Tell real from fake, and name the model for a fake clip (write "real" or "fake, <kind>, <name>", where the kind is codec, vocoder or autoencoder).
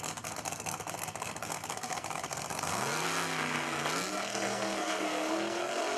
fake, codec, SNAC